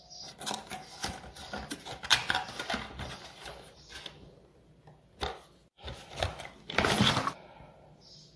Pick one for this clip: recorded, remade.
recorded